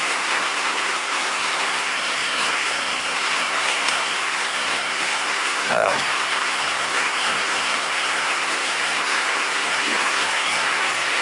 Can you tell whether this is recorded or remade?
remade